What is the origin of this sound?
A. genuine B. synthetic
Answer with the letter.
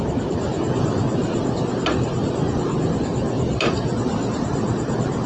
A